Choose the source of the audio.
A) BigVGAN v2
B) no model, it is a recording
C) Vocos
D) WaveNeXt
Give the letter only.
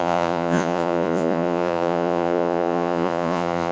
C